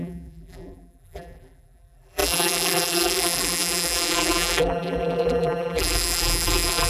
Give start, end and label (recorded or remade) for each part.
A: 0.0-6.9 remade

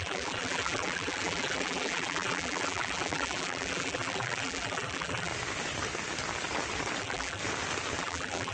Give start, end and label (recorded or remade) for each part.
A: 0.0-5.3 remade; 5.3-7.0 recorded; 7.0-7.4 remade; 7.4-8.0 recorded; 8.0-8.5 remade

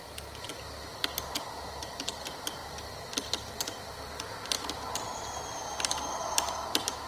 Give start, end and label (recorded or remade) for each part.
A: 0.0-2.6 recorded; 2.6-6.1 remade; 6.1-7.1 recorded